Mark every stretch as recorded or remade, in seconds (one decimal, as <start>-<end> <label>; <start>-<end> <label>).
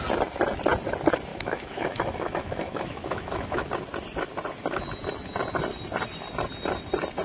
0.0-1.3 recorded; 1.3-3.7 remade; 3.7-7.2 recorded